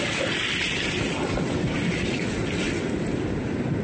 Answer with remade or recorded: recorded